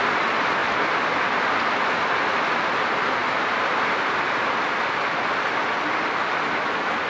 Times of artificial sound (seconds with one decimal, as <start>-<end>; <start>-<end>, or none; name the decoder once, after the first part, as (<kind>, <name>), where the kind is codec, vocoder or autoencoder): 0.0-0.6 (vocoder, BigVGAN v2); 1.3-3.2; 3.9-7.1